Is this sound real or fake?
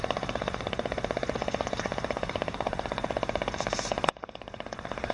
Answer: fake